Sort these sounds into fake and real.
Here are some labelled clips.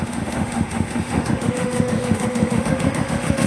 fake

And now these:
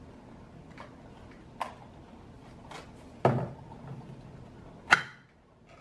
real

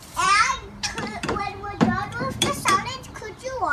fake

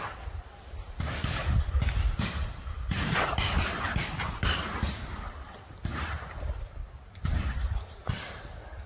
real